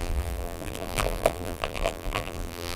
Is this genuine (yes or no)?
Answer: no